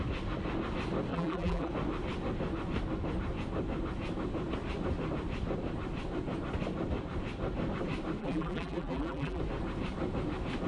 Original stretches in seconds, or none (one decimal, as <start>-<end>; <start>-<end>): 0.0-1.1; 1.7-8.2; 9.4-10.7